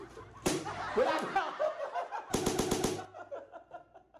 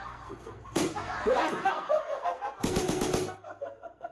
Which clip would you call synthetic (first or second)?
second